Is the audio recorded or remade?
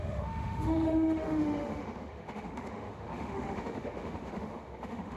remade